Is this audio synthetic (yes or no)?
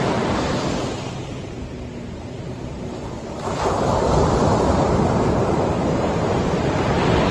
no